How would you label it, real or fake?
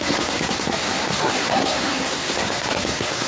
fake